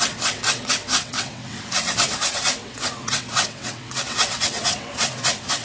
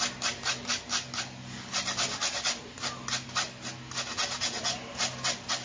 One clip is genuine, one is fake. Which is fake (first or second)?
first